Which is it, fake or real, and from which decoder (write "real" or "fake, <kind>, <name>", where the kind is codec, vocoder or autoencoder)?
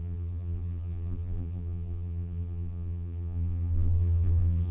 fake, vocoder, BigVGAN v2